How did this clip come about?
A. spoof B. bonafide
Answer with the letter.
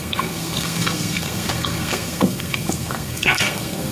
A